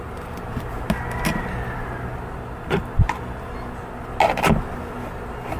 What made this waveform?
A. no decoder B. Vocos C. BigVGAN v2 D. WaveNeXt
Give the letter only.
A